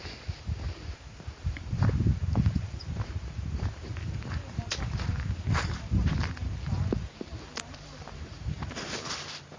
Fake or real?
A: fake